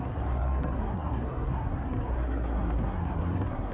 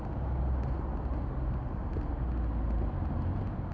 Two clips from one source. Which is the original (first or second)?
second